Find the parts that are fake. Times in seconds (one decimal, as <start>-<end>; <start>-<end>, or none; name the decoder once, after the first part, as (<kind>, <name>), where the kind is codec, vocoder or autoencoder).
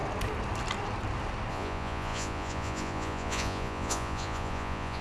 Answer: 1.5-5.0 (vocoder, Vocos)